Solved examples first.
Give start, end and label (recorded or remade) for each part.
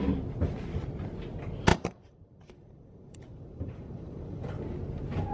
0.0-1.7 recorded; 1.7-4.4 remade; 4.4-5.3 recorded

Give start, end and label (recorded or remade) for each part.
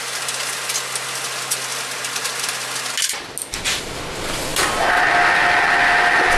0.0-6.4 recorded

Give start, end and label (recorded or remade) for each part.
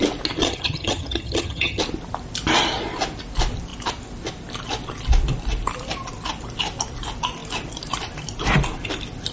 0.0-0.4 recorded; 0.4-1.8 remade; 1.8-9.3 recorded